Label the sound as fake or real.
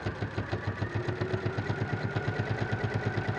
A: real